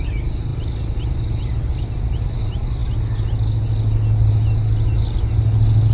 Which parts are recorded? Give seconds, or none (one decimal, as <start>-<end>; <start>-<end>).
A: 0.0-5.9